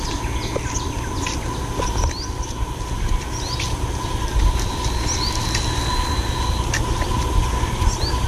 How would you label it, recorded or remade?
recorded